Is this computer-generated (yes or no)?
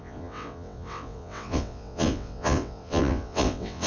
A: yes